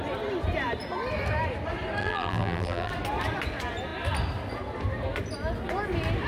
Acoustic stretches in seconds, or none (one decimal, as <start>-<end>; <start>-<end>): 0.0-2.0; 2.9-6.3